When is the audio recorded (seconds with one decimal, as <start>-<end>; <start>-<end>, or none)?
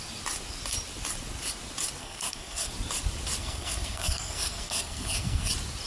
0.0-2.0; 2.7-3.4; 5.5-5.9